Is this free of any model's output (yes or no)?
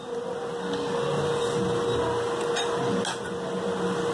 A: yes